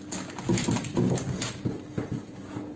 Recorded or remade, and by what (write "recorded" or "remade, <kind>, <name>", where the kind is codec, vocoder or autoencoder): recorded